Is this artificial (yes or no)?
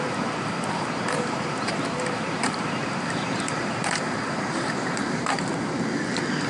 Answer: yes